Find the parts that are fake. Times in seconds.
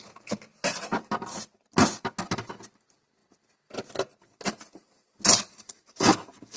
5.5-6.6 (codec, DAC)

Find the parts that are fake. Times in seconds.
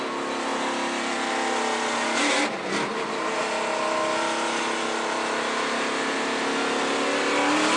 none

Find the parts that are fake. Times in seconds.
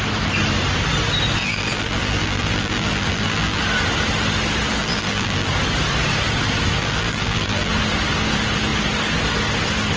1.4-3.6 (vocoder, BigVGAN v2); 4.8-5.5; 6.8-7.7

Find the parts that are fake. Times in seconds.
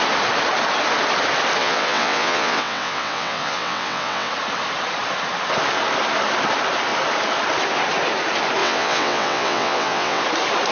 1.6-4.3 (vocoder, WaveNeXt); 8.6-10.2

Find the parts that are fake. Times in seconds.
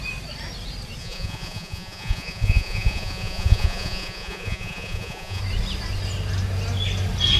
1.0-5.4 (vocoder, Vocos)